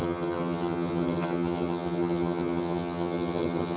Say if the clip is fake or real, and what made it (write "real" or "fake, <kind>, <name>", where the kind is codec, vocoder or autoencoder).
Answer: fake, vocoder, HiFi-GAN